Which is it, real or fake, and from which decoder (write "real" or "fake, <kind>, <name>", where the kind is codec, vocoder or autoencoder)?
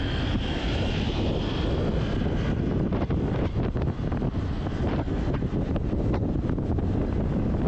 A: fake, vocoder, BigVGAN v2